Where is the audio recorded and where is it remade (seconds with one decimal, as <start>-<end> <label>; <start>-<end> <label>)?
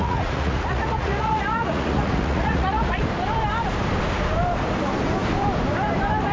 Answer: 0.0-3.0 remade; 3.0-6.3 recorded